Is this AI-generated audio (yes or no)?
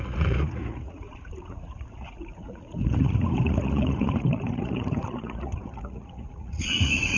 yes